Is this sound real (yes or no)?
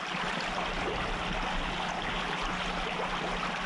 yes